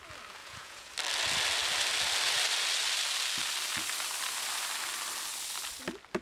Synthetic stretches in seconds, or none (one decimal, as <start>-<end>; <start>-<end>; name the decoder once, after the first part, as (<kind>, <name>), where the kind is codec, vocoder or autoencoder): 0.4-0.9 (vocoder, Vocos)